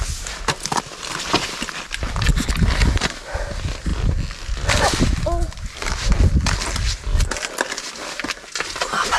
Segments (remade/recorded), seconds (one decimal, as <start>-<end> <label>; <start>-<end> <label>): 0.0-9.2 recorded